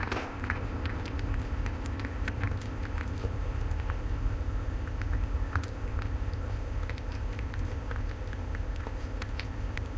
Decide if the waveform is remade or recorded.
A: remade